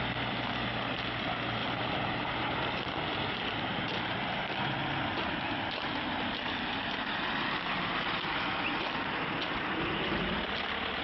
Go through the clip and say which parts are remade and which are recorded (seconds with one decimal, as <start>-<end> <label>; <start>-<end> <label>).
0.0-1.6 recorded; 1.6-2.5 remade; 2.5-11.0 recorded